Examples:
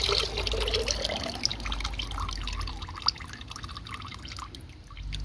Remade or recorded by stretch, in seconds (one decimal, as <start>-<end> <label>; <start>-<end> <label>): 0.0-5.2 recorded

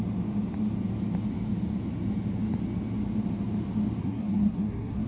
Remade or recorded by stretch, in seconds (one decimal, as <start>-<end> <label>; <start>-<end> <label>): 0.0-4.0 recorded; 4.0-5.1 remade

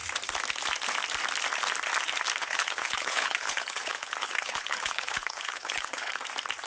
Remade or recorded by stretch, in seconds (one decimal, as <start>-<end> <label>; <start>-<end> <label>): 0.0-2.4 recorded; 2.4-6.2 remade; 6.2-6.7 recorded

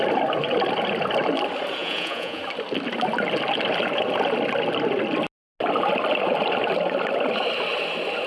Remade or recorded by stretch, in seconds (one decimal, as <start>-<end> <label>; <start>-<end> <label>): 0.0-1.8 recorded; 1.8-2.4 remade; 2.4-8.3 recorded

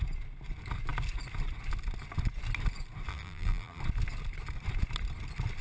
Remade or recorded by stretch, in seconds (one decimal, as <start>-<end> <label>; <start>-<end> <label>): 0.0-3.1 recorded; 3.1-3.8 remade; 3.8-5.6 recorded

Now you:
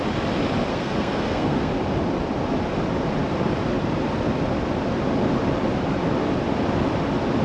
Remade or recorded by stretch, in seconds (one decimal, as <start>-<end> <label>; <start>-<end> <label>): 0.0-0.7 recorded; 0.7-1.7 remade; 1.7-7.4 recorded